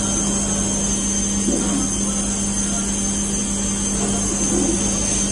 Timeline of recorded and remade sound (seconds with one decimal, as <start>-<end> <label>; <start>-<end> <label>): 0.0-5.3 recorded